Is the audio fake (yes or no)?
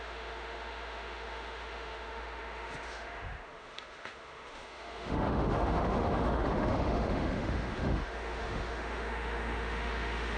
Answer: yes